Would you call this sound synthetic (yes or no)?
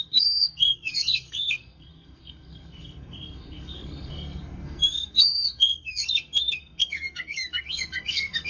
yes